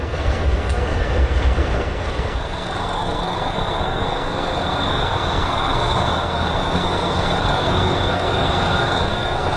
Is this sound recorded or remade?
remade